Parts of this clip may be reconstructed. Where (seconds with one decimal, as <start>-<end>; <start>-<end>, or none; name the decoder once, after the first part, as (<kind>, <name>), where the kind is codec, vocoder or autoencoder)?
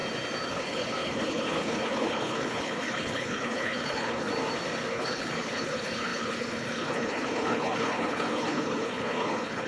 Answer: 0.5-4.3 (codec, HILCodec); 4.9-9.7